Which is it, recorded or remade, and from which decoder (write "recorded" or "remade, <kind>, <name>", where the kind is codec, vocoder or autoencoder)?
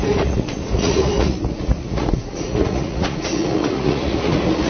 remade, vocoder, Vocos